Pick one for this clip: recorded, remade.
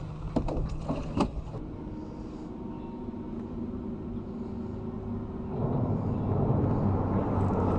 recorded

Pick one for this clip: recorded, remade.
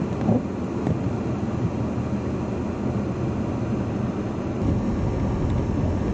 recorded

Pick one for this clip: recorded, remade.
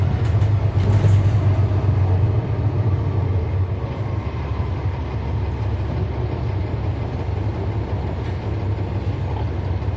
recorded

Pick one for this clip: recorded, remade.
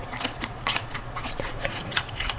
remade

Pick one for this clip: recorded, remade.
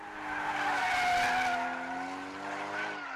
recorded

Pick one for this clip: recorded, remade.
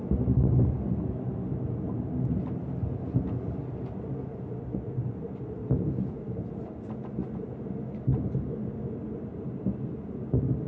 recorded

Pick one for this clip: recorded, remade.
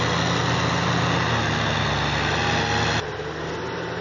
recorded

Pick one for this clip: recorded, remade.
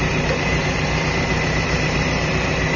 recorded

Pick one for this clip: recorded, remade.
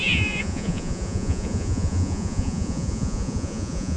remade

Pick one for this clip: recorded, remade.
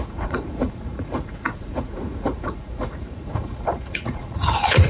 remade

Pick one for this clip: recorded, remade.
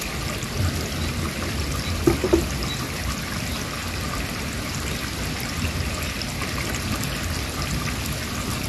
recorded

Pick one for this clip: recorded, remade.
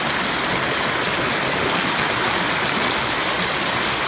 recorded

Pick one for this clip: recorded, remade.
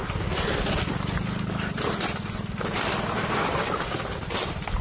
recorded